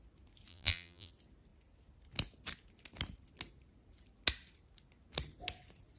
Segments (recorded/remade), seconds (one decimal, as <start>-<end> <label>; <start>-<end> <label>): 0.0-0.5 recorded; 0.5-1.1 remade; 1.1-6.0 recorded

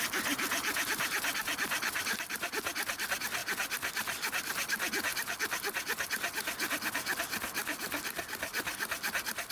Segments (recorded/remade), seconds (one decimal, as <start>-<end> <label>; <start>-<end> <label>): 0.0-9.5 recorded

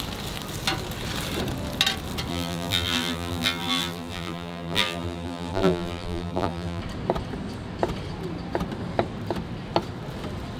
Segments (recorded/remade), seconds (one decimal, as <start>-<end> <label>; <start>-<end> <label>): 0.0-2.3 recorded; 2.3-6.8 remade; 6.8-10.6 recorded

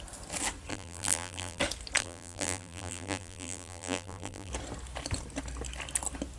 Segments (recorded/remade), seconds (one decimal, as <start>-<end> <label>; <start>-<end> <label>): 0.0-0.7 recorded; 0.7-1.6 remade; 1.6-2.0 recorded; 2.0-4.5 remade; 4.5-6.4 recorded

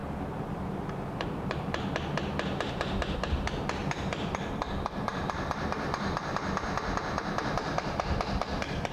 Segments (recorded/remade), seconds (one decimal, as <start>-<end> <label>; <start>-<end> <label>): 0.0-1.9 remade; 1.9-3.8 recorded; 3.8-8.2 remade; 8.2-8.9 recorded

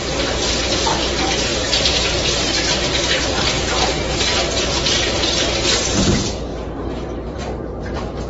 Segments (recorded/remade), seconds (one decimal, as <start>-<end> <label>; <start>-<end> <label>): 0.0-1.5 recorded; 1.5-3.5 remade; 3.5-6.5 recorded; 6.5-8.3 remade

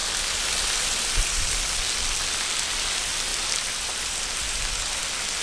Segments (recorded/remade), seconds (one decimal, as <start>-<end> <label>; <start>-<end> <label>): 0.0-1.6 remade; 1.6-3.3 recorded; 3.3-5.0 remade; 5.0-5.4 recorded